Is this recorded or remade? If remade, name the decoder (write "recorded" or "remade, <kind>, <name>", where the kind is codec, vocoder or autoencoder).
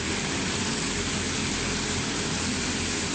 recorded